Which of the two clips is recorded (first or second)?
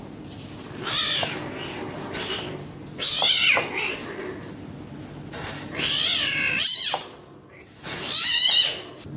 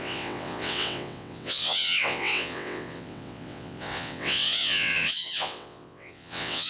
first